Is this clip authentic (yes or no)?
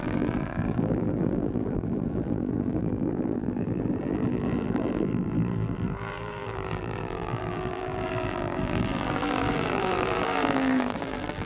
no